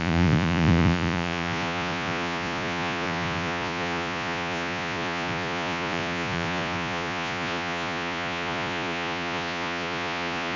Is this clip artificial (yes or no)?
yes